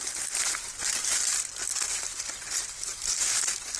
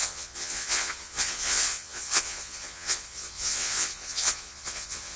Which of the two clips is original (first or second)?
first